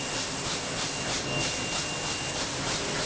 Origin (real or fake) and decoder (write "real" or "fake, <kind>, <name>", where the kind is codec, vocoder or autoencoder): real